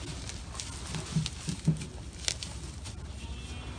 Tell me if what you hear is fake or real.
real